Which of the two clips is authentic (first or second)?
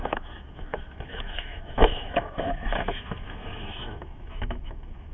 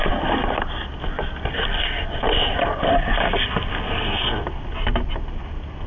second